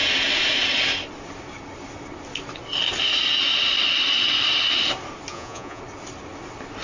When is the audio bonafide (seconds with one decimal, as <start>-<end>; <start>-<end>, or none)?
0.0-5.3; 5.8-6.8